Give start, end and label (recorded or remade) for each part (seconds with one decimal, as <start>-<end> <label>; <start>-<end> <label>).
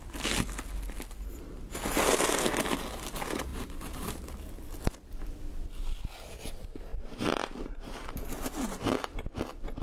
0.0-3.5 recorded; 3.5-4.3 remade; 4.3-6.9 recorded; 6.9-8.9 remade; 8.9-9.8 recorded